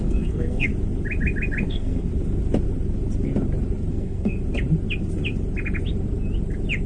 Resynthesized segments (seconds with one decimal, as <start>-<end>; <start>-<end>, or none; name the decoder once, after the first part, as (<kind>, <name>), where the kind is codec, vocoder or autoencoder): 0.0-0.7 (codec, SNAC); 1.7-2.1; 3.9-4.4